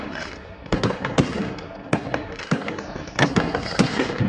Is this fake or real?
fake